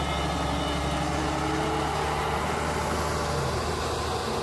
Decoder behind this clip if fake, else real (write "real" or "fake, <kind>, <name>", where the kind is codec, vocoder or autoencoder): real